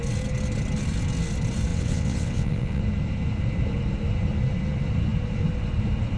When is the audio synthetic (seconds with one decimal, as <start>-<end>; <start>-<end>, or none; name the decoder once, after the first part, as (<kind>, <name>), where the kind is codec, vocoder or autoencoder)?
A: 1.7-2.8 (vocoder, WaveNeXt)